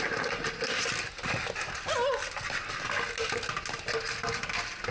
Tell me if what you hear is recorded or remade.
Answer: recorded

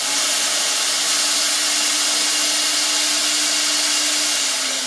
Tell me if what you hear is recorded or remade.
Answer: recorded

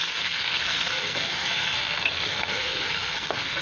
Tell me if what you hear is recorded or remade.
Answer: remade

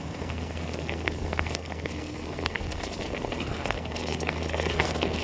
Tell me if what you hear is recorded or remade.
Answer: remade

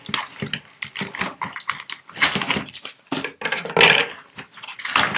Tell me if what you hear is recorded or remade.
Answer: recorded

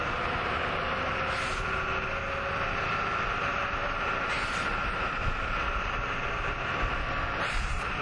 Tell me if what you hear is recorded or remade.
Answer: recorded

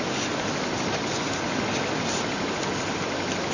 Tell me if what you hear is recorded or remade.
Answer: recorded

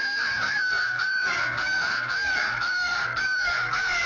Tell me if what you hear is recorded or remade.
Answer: remade